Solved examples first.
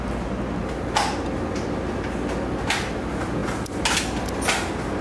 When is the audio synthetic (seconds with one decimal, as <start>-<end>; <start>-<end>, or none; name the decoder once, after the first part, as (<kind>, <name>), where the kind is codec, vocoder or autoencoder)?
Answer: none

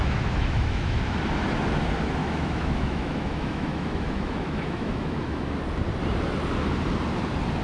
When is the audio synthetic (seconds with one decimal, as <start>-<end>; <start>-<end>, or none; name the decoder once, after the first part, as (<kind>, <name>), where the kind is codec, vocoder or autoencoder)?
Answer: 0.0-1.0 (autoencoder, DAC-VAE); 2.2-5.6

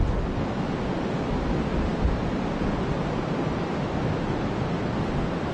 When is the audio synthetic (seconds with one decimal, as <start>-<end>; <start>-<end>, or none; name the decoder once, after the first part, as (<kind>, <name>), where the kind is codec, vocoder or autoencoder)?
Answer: none

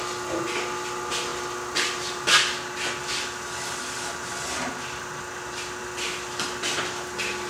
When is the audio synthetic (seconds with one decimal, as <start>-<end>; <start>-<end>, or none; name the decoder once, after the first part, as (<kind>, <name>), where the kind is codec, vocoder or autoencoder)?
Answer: none

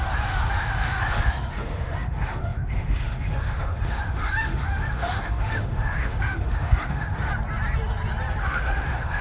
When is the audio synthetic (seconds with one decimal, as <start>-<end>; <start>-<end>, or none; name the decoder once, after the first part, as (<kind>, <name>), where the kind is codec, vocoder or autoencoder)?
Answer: 0.0-7.3 (autoencoder, DAC-VAE); 8.4-9.2

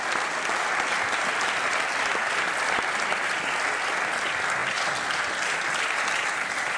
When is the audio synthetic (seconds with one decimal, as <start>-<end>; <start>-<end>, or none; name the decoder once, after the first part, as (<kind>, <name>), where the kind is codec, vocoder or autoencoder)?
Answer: none

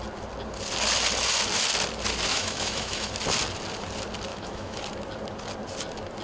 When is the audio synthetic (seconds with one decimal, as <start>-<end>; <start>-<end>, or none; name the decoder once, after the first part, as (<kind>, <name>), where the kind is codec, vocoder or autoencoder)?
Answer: 2.3-3.1 (autoencoder, DAC-VAE); 4.3-4.8